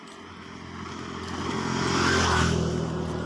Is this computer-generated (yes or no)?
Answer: no